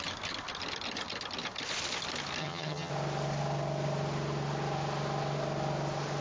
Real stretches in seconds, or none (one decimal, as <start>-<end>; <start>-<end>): 0.0-2.4; 2.9-6.2